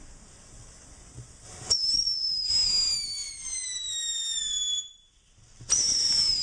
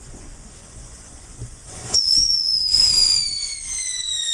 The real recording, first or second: first